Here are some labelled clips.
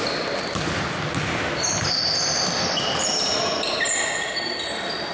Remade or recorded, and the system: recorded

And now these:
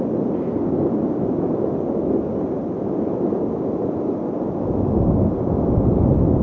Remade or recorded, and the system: recorded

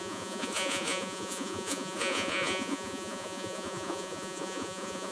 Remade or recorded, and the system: remade, vocoder, Vocos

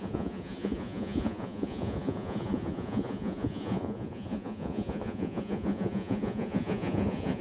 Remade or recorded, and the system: remade, vocoder, Vocos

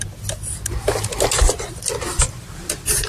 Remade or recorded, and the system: recorded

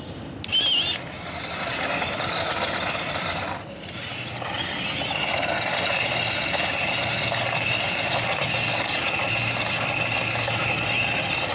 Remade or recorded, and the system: recorded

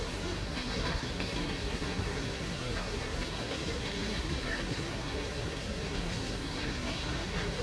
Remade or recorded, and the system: remade, codec, SNAC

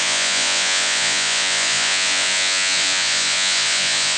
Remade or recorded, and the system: remade, vocoder, Vocos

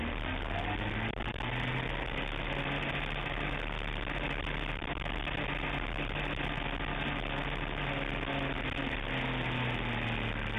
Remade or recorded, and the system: recorded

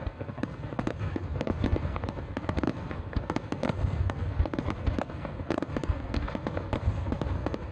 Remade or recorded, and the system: remade, codec, SNAC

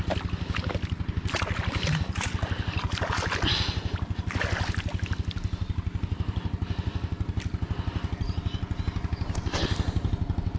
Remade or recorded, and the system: recorded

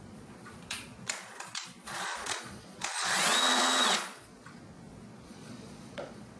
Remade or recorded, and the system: remade, vocoder, Vocos